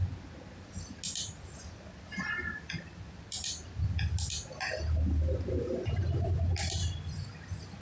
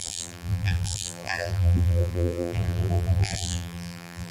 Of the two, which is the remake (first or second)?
second